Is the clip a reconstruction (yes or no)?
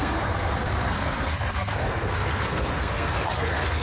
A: yes